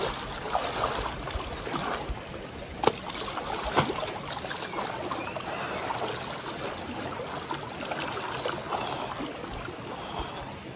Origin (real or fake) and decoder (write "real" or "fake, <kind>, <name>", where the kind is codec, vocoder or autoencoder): real